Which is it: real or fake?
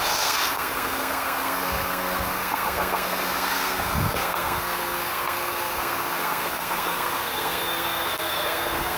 fake